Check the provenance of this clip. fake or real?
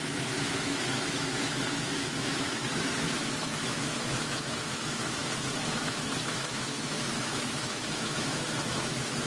fake